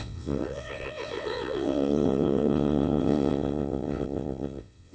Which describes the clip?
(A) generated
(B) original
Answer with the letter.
A